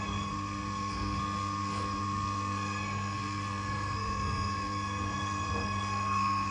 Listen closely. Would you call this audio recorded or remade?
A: remade